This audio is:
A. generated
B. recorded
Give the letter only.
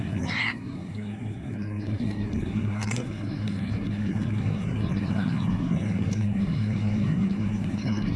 A